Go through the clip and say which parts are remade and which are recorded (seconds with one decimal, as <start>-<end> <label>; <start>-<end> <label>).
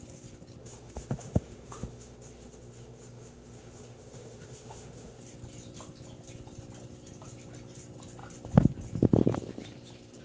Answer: 0.0-0.6 recorded; 0.6-5.2 remade; 5.2-10.2 recorded